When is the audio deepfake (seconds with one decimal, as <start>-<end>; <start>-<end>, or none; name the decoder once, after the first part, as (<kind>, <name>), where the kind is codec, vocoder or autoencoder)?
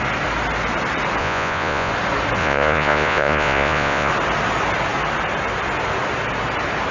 1.2-1.9 (vocoder, Vocos); 2.4-4.1